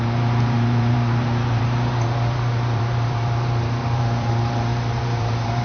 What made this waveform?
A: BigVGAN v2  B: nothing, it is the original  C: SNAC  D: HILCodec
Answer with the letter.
A